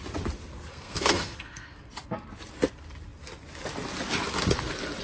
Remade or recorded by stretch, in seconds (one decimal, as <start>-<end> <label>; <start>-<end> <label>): 0.0-0.7 recorded; 0.7-1.9 remade; 1.9-5.0 recorded